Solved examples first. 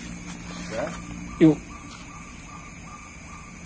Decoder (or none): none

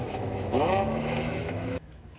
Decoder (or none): autoencoder, DAC-VAE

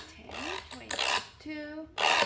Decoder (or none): none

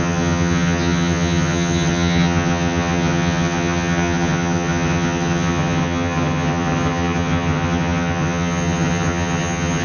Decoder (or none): vocoder, HiFi-GAN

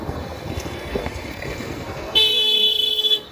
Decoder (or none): codec, SNAC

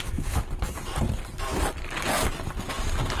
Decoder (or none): none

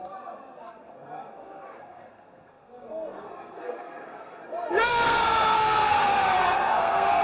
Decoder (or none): codec, SNAC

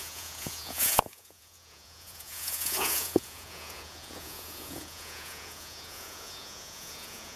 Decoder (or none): vocoder, Vocos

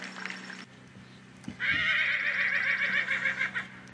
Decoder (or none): none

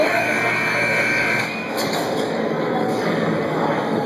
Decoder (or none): codec, DAC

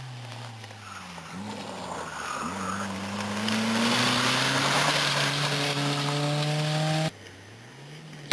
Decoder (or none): none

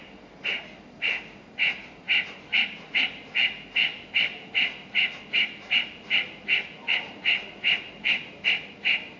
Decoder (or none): none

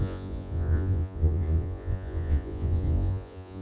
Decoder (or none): vocoder, Vocos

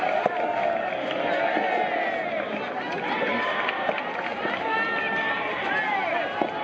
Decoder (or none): none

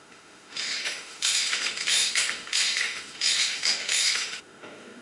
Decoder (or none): autoencoder, DAC-VAE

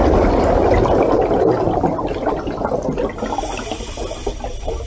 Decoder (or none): none